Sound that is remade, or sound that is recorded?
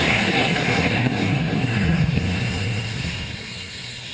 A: remade